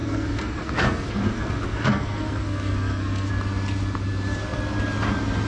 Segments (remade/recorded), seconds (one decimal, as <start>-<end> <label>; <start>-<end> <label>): 0.0-3.3 remade; 3.3-5.5 recorded